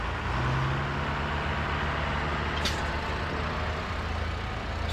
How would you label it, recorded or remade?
recorded